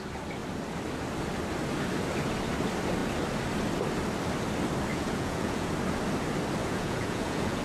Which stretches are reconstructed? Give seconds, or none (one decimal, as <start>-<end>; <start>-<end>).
4.9-5.7; 6.6-7.6